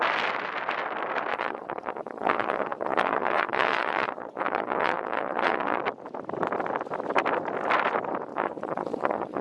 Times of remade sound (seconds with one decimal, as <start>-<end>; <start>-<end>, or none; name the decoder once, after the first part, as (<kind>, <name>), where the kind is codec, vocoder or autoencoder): 1.3-5.8 (vocoder, Vocos); 8.3-9.4